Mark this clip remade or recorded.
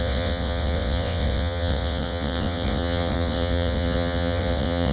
remade